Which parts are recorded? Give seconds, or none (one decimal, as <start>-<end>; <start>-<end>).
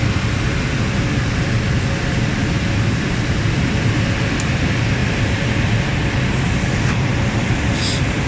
0.0-8.3